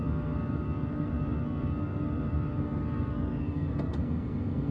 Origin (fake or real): fake